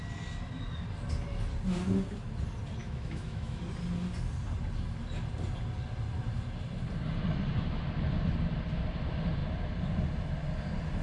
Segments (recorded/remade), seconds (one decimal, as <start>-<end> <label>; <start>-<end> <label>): 0.0-2.8 recorded; 2.8-3.6 remade; 3.6-11.0 recorded